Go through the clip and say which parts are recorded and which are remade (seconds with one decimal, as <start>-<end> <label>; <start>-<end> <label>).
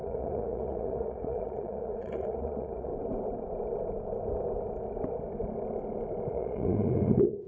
0.0-2.9 remade; 2.9-6.3 recorded; 6.3-7.5 remade